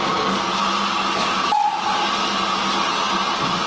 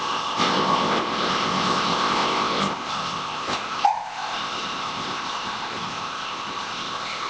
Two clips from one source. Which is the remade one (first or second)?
second